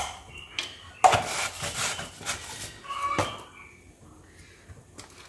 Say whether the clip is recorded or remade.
recorded